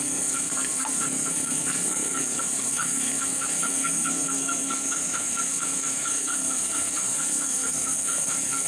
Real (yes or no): no